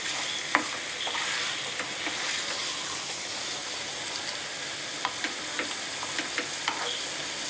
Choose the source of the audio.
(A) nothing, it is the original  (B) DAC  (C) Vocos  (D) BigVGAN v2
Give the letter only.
A